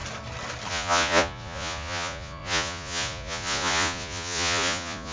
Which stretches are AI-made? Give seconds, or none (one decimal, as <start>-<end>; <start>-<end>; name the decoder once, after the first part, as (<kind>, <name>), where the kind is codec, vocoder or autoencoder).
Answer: 0.7-5.1 (vocoder, Vocos)